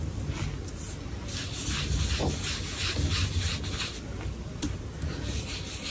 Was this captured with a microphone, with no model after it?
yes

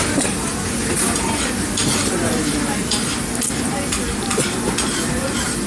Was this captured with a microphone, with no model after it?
yes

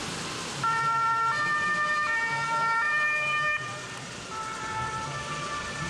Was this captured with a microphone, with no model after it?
yes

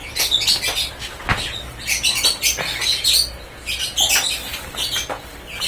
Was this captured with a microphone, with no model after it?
yes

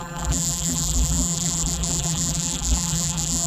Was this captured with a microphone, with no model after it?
no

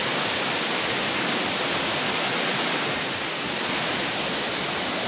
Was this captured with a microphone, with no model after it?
yes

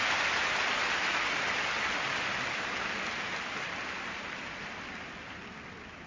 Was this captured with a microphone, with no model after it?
yes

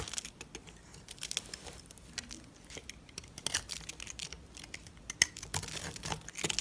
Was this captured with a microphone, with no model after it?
yes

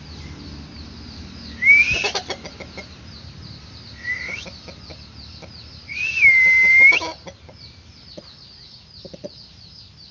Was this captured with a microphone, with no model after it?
yes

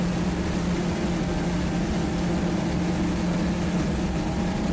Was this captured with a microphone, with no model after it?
yes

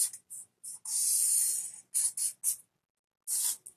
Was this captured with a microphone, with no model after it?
yes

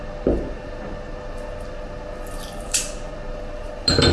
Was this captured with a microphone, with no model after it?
yes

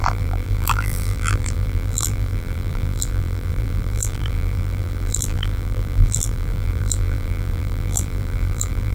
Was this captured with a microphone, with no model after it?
no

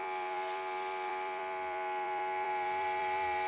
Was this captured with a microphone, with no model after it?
no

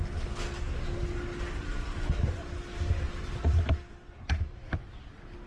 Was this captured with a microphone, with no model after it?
yes